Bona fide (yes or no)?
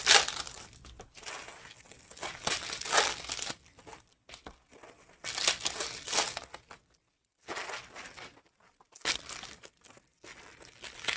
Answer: yes